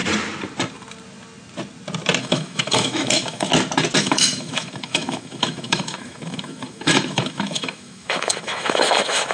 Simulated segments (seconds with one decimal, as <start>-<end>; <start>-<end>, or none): 2.2-3.5; 4.0-9.3